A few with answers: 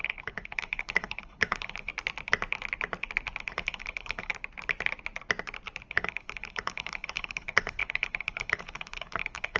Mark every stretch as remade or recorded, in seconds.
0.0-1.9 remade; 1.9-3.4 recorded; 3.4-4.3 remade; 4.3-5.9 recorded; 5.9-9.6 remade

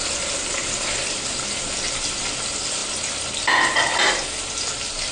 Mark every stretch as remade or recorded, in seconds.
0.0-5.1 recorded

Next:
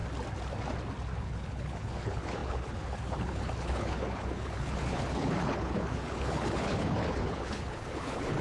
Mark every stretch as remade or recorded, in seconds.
0.0-1.2 recorded; 1.2-8.4 remade